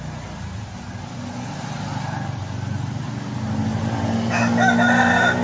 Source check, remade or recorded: recorded